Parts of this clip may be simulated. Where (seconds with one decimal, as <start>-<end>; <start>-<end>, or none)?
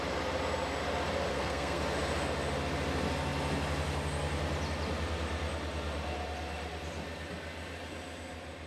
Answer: 1.3-1.8